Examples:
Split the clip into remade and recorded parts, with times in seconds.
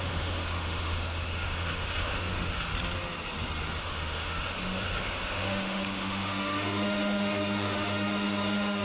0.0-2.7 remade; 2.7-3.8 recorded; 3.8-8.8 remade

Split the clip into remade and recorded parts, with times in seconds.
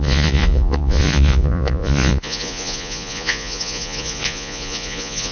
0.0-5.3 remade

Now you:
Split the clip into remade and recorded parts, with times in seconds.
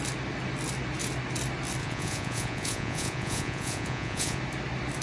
0.0-1.8 recorded; 1.8-4.4 remade; 4.4-5.0 recorded